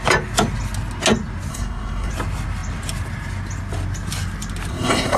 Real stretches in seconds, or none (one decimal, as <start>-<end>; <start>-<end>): 0.0-1.5; 2.1-4.7